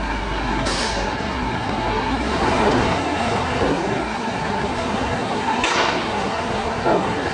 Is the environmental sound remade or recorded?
remade